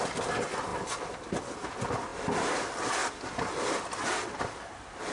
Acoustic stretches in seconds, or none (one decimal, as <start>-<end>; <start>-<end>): 0.0-5.1